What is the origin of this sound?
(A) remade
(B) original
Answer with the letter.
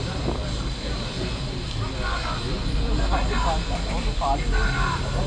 B